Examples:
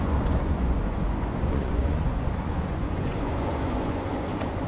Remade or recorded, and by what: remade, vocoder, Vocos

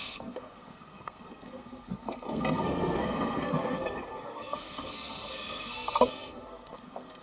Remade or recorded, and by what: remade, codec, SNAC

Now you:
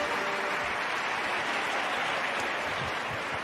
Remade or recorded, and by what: recorded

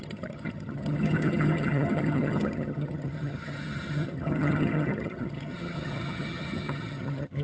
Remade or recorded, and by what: remade, vocoder, HiFi-GAN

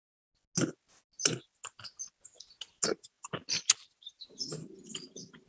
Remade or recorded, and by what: recorded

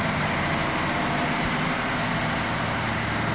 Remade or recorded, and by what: recorded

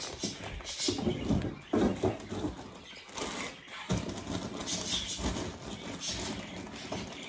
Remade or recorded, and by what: recorded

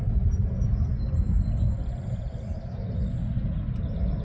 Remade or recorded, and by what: recorded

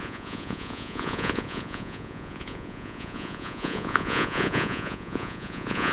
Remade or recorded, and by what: remade, vocoder, Vocos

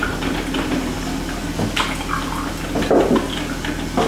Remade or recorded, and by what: recorded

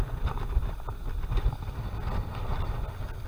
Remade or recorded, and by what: recorded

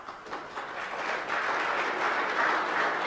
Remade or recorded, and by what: recorded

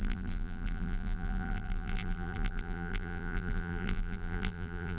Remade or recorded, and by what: remade, vocoder, BigVGAN v2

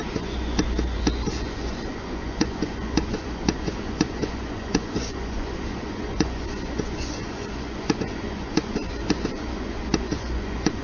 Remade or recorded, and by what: remade, vocoder, Vocos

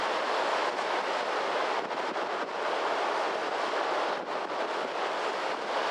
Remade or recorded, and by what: recorded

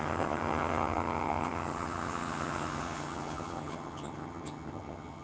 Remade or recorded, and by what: remade, vocoder, HiFi-GAN